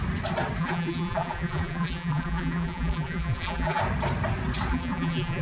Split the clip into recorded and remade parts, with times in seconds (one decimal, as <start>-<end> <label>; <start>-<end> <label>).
0.0-0.6 recorded; 0.6-3.8 remade; 3.8-4.7 recorded; 4.7-5.4 remade